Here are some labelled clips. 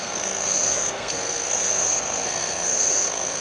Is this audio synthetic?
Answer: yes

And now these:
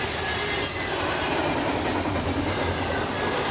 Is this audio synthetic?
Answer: no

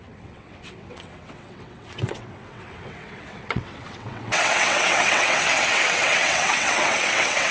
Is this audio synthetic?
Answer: yes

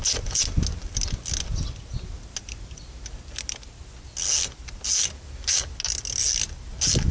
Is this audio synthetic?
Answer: no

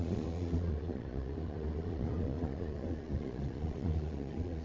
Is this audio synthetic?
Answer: yes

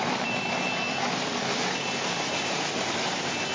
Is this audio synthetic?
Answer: no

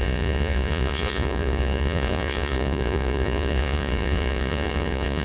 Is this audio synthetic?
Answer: yes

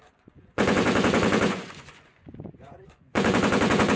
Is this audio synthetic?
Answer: yes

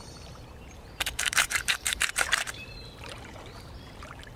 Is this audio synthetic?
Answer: yes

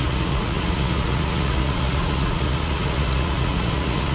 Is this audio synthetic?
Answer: yes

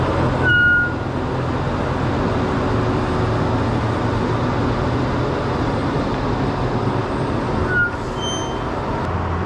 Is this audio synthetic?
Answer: no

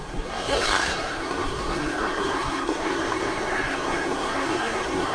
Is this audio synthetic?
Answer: yes